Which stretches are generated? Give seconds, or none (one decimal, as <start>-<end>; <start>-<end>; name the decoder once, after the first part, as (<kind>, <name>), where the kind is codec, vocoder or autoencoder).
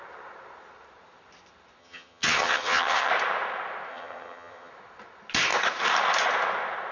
1.8-3.1 (vocoder, HiFi-GAN); 3.9-4.7